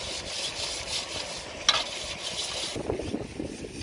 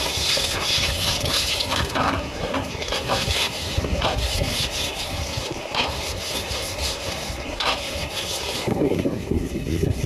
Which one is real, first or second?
first